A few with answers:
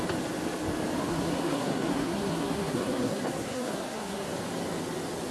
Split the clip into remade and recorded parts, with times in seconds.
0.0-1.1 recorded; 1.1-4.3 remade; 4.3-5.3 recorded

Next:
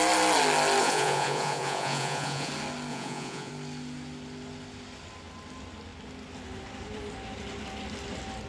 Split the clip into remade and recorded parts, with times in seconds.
0.0-0.8 recorded; 0.8-2.5 remade; 2.5-2.9 recorded; 2.9-3.5 remade; 3.5-8.5 recorded

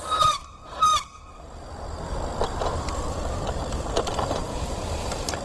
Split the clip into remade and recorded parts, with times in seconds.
0.0-0.9 remade; 0.9-2.6 recorded; 2.6-3.6 remade; 3.6-4.8 recorded; 4.8-5.4 remade

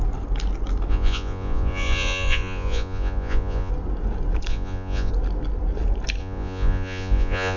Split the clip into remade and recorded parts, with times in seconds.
0.0-0.9 recorded; 0.9-3.7 remade; 3.7-4.5 recorded; 4.5-5.1 remade; 5.1-6.2 recorded; 6.2-7.6 remade

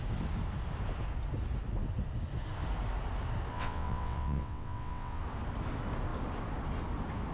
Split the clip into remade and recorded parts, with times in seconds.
0.0-3.5 recorded; 3.5-5.2 remade; 5.2-7.3 recorded

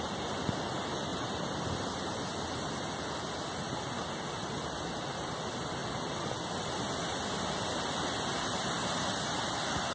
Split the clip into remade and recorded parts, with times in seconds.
0.0-9.9 recorded

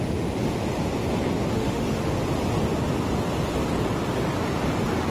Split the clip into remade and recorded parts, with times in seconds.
0.0-1.5 recorded; 1.5-2.1 remade; 2.1-5.1 recorded

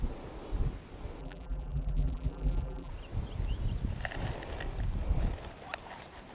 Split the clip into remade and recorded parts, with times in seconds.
0.0-1.2 recorded; 1.2-2.9 remade; 2.9-6.3 recorded